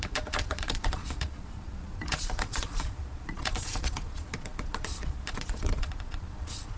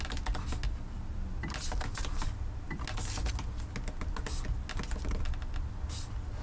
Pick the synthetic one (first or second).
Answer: first